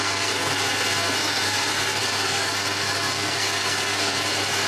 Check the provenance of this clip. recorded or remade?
remade